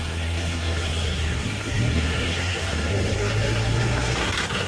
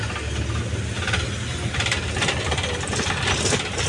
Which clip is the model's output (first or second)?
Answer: first